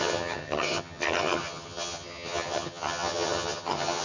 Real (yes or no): no